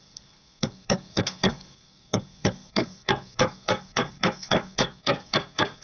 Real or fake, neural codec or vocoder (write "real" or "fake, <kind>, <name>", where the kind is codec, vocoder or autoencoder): fake, codec, SNAC